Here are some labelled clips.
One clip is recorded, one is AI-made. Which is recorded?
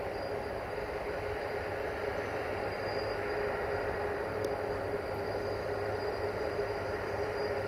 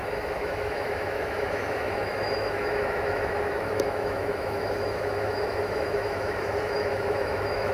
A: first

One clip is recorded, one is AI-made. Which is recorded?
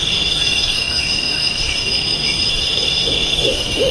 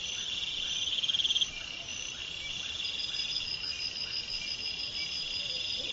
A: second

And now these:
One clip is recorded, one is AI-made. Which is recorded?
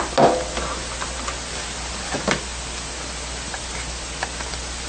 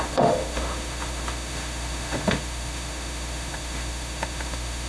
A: first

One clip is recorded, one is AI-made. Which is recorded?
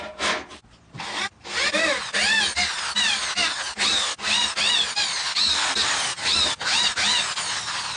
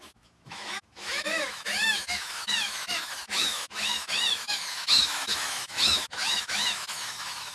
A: first